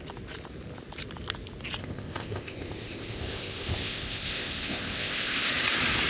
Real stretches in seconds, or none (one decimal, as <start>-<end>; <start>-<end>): 0.0-1.8; 5.5-6.1